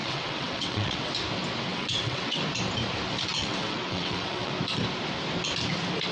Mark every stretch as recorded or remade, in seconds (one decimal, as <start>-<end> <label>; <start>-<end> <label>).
0.0-1.1 remade; 1.1-1.7 recorded; 1.7-2.4 remade; 2.4-3.4 recorded; 3.4-4.5 remade; 4.5-6.1 recorded